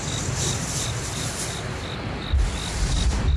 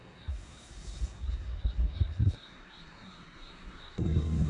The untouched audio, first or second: first